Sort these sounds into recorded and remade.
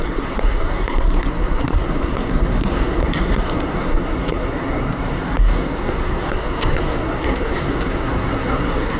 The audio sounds remade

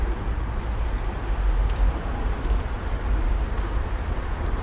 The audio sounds remade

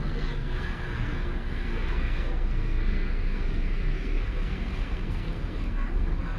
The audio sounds remade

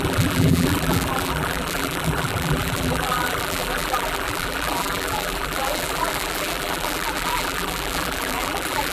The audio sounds remade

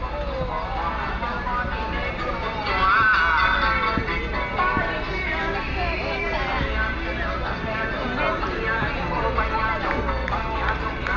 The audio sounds recorded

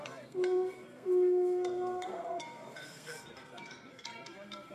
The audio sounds remade